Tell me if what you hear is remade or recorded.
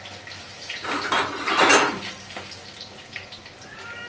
recorded